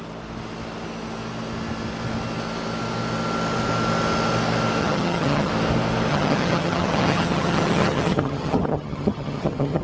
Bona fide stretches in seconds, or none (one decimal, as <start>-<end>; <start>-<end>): 0.0-4.8; 5.5-6.1